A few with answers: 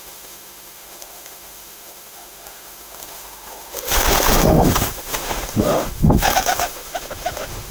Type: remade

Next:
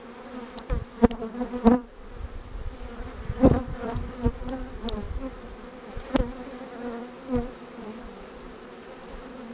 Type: remade